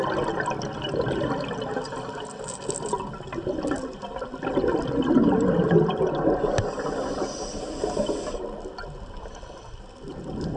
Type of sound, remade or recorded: recorded